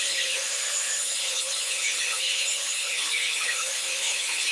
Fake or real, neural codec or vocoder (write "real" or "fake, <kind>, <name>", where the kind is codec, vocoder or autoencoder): fake, codec, HILCodec